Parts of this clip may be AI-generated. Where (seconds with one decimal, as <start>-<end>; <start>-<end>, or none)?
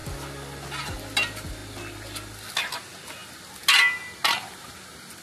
none